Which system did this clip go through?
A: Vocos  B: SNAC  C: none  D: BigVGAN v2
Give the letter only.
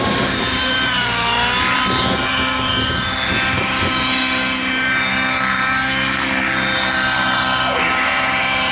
C